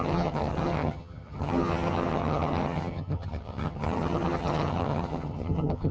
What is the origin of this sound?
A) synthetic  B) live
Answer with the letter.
A